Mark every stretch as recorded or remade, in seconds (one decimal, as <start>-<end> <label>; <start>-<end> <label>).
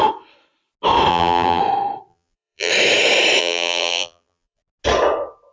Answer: 0.0-1.1 recorded; 1.1-1.6 remade; 1.6-2.1 recorded; 2.1-2.7 remade; 2.7-3.4 recorded; 3.4-4.6 remade; 4.6-5.5 recorded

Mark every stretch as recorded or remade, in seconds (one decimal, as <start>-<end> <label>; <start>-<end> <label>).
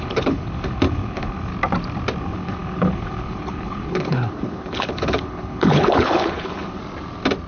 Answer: 0.0-1.5 remade; 1.5-2.2 recorded; 2.2-6.8 remade; 6.8-7.5 recorded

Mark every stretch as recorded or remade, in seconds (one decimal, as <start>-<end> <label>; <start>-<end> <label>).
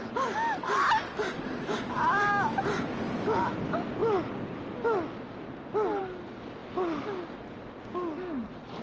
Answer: 0.0-8.8 recorded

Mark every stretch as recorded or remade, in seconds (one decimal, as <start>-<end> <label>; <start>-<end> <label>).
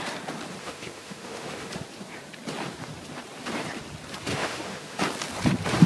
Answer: 0.0-0.6 recorded; 0.6-1.7 remade; 1.7-4.3 recorded; 4.3-5.0 remade; 5.0-5.9 recorded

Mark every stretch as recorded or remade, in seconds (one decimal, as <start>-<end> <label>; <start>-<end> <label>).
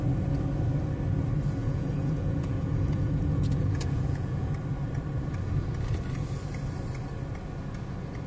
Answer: 0.0-1.6 recorded; 1.6-4.5 remade; 4.5-8.3 recorded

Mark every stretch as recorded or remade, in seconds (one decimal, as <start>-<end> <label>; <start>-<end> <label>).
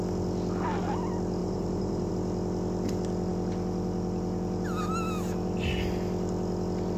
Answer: 0.0-1.4 recorded; 1.4-2.1 remade; 2.1-7.0 recorded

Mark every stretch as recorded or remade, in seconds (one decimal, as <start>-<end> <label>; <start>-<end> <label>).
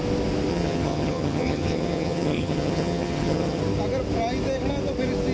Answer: 0.0-0.5 recorded; 0.5-3.6 remade; 3.6-5.3 recorded